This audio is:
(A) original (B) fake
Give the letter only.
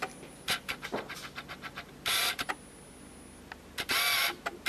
A